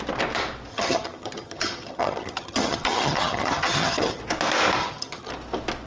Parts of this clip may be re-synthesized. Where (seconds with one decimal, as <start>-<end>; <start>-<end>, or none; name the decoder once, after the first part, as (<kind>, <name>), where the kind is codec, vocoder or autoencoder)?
0.7-4.2 (vocoder, HiFi-GAN); 4.8-5.3